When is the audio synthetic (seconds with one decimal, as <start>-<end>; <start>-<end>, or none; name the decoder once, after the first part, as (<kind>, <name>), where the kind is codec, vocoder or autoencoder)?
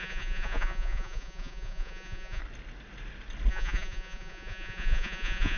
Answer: 0.0-2.4 (vocoder, Vocos); 3.5-5.6